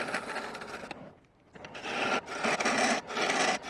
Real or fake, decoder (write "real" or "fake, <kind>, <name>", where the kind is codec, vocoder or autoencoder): real